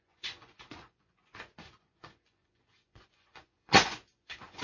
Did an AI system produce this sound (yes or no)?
yes